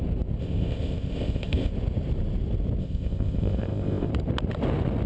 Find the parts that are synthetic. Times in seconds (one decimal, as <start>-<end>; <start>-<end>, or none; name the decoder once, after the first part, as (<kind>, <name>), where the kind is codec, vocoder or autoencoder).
0.4-1.7 (codec, ZipCodec); 2.8-4.1